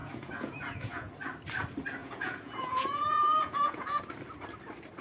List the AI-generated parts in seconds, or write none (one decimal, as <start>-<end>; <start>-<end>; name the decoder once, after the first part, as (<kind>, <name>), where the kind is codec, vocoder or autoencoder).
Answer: 0.0-1.1 (vocoder, Vocos); 2.0-4.0